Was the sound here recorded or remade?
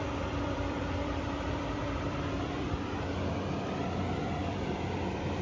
remade